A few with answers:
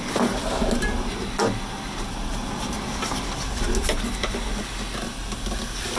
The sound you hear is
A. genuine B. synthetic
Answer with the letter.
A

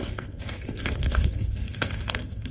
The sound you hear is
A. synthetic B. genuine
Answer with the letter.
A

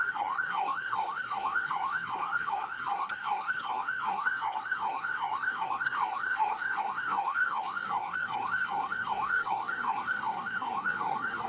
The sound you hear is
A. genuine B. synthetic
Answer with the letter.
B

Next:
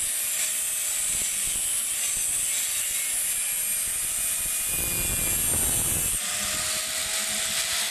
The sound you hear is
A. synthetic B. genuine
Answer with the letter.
B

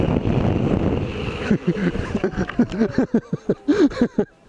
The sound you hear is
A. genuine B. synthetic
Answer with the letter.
A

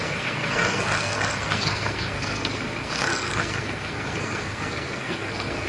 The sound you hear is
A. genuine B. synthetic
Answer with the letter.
B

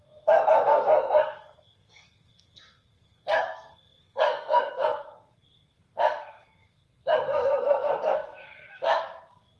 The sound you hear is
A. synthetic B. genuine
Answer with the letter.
A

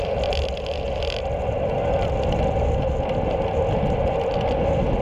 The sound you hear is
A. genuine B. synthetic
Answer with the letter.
A